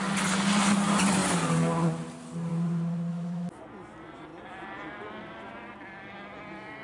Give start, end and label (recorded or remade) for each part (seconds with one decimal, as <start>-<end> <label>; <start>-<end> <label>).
0.0-3.1 recorded; 3.1-3.6 remade; 3.6-6.8 recorded